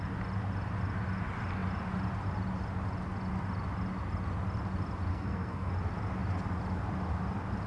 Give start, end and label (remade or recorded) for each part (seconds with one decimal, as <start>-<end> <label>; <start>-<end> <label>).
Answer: 0.0-5.1 recorded; 5.1-5.7 remade; 5.7-7.7 recorded